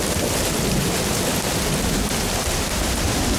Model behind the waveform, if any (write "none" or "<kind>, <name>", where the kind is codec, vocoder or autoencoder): vocoder, BigVGAN v2